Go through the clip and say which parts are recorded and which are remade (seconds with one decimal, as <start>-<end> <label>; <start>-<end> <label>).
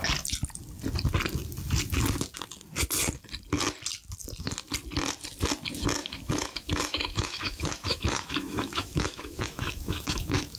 0.0-6.0 recorded; 6.0-10.6 remade